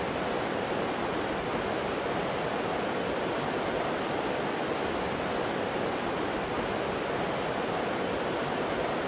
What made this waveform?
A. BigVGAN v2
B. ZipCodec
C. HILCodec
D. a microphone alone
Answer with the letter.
D